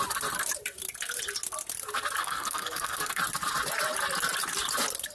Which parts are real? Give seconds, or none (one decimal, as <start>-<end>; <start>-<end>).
0.0-2.2; 3.2-5.1

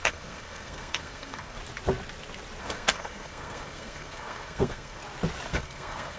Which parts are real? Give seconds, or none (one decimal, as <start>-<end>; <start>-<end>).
1.6-2.6; 5.0-5.5

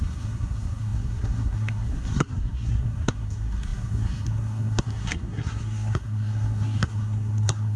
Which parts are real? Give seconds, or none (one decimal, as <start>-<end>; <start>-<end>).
none

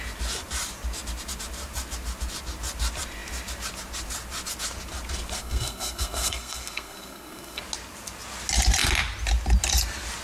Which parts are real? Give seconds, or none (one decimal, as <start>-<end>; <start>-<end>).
0.0-5.4; 7.6-10.2

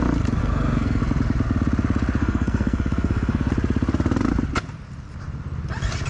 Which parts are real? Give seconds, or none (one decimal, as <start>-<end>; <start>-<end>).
0.0-0.4; 1.0-2.2; 3.5-6.1